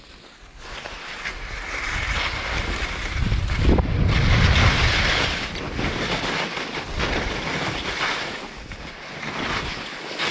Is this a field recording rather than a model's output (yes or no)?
yes